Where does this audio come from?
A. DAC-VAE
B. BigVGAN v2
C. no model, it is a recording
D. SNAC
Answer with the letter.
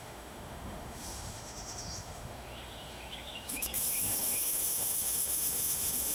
A